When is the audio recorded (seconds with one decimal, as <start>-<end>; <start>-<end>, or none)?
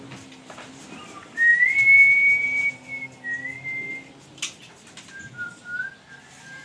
0.0-6.6